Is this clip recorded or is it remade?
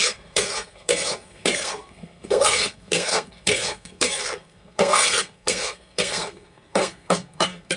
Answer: remade